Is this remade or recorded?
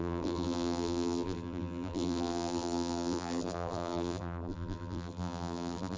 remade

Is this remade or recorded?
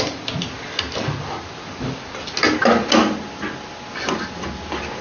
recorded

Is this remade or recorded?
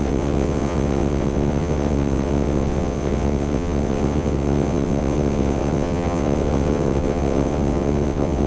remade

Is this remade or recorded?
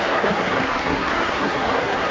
remade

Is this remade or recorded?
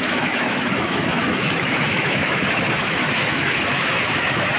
remade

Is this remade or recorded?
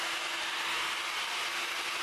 recorded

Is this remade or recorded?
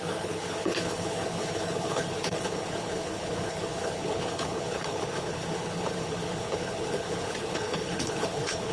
remade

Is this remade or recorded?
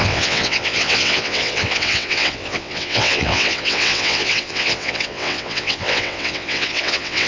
remade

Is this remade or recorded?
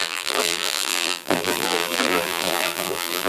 remade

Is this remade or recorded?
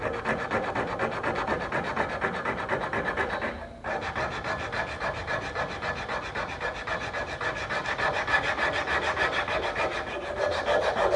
recorded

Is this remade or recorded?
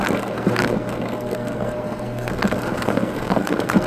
remade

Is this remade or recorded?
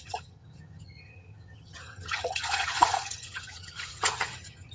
remade